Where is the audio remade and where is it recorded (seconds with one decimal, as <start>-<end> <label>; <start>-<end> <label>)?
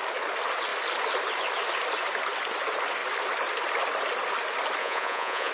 0.0-4.8 recorded; 4.8-5.5 remade